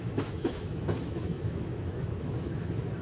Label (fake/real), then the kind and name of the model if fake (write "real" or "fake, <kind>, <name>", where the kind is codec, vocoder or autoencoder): fake, autoencoder, DAC-VAE